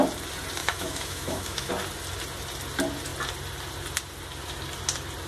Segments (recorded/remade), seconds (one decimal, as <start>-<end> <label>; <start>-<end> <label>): 0.0-0.6 recorded; 0.6-1.7 remade; 1.7-5.3 recorded